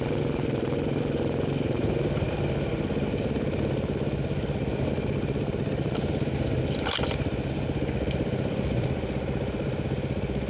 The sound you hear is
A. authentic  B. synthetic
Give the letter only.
A